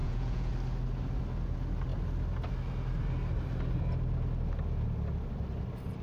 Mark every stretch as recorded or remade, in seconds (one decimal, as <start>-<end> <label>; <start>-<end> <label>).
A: 0.0-0.5 remade; 0.5-6.0 recorded